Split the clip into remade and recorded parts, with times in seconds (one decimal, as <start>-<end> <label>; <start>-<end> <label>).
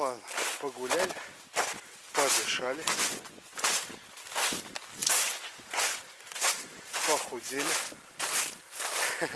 0.0-2.5 recorded; 2.5-3.8 remade; 3.8-5.0 recorded; 5.0-7.7 remade; 7.7-9.4 recorded